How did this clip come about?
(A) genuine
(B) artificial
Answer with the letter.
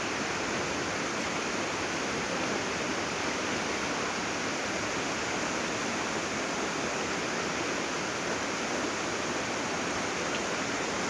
A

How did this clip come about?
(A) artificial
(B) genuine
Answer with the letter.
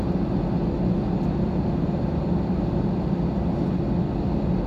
B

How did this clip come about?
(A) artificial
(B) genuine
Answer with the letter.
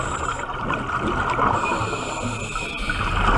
B